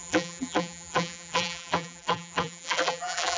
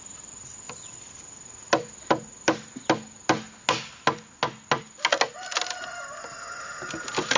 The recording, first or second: second